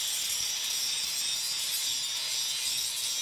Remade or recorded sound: recorded